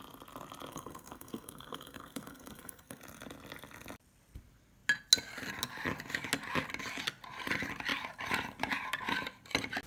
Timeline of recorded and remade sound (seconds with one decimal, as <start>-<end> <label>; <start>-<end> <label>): 0.0-0.7 recorded; 0.7-3.0 remade; 3.0-9.9 recorded